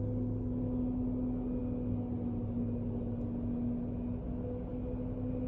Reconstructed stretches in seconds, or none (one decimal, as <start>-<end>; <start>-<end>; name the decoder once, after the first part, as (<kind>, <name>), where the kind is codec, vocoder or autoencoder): none